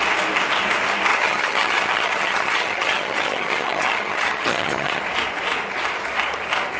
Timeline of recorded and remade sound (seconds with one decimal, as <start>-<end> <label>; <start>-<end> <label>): 0.0-1.1 recorded; 1.1-5.0 remade; 5.0-6.8 recorded